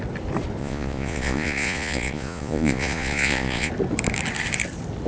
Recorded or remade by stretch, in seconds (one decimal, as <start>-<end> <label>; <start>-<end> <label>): 0.0-0.6 recorded; 0.6-3.7 remade; 3.7-5.1 recorded

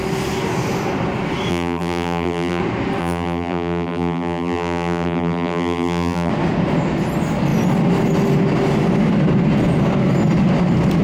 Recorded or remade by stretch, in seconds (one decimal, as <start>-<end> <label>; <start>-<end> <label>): 0.0-1.5 recorded; 1.5-2.6 remade; 2.6-3.0 recorded; 3.0-6.3 remade; 6.3-11.0 recorded

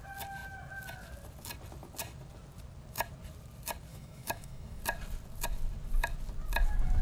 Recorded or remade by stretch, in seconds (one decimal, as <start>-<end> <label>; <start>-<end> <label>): 0.0-3.9 recorded; 3.9-4.8 remade; 4.8-7.0 recorded

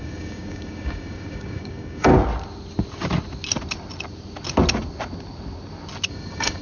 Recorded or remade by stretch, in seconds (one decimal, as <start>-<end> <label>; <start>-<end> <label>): 0.0-2.1 remade; 2.1-6.1 recorded; 6.1-6.6 remade

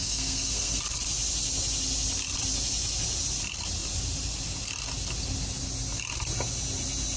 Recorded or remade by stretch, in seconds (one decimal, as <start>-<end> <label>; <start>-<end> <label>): 0.0-0.8 remade; 0.8-7.2 recorded

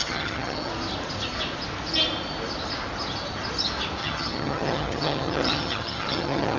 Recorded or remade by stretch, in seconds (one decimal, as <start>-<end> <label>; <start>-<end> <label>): 0.0-0.7 remade; 0.7-4.0 recorded; 4.0-6.6 remade

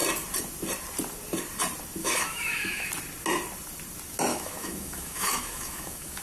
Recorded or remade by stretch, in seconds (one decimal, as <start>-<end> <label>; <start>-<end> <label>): 0.0-2.0 recorded; 2.0-2.9 remade; 2.9-4.3 recorded; 4.3-6.2 remade

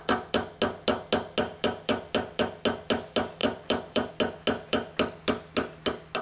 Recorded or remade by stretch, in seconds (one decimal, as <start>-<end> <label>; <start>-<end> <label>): 0.0-3.4 recorded; 3.4-4.1 remade; 4.1-6.2 recorded